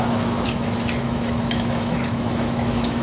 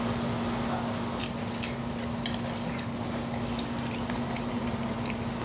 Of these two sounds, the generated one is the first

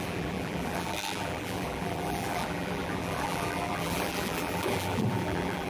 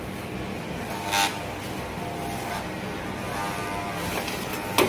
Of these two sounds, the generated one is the first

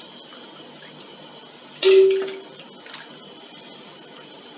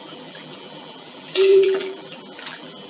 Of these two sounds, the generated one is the second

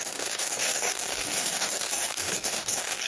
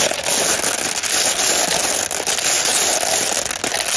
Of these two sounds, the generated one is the first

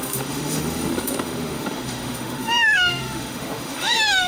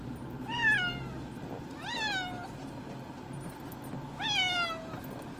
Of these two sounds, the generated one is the first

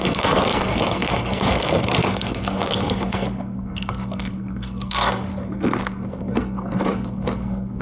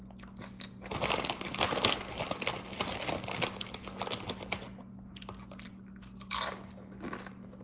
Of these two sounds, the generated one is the first